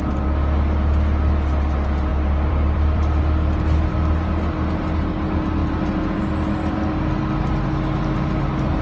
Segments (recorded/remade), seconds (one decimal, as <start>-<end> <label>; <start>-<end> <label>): 0.0-2.1 recorded; 2.1-3.2 remade; 3.2-5.6 recorded; 5.6-6.2 remade; 6.2-8.8 recorded